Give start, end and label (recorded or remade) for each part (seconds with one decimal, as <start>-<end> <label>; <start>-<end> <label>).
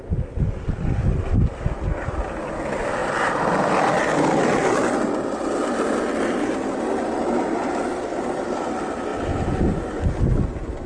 0.0-10.9 recorded